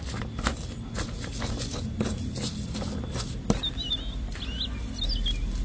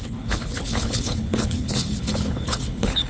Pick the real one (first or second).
first